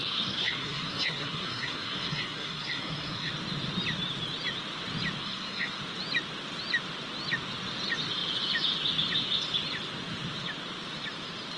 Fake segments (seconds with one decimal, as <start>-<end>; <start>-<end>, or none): 0.0-3.3; 5.2-5.8